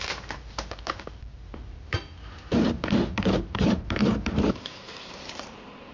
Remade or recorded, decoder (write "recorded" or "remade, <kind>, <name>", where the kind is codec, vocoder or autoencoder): remade, vocoder, BigVGAN v2